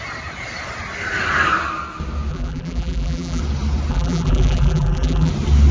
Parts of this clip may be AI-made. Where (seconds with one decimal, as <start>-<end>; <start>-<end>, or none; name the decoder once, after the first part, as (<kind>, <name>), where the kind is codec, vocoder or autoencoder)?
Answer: 2.3-3.4 (vocoder, BigVGAN v2); 3.9-5.3